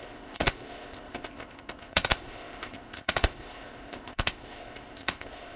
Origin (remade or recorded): remade